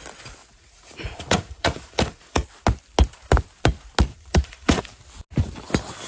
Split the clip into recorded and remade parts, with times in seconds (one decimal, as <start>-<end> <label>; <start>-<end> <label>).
0.0-0.4 recorded; 0.4-2.4 remade; 2.4-4.1 recorded; 4.1-4.8 remade; 4.8-6.1 recorded